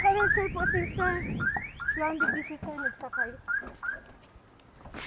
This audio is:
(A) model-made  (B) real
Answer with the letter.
B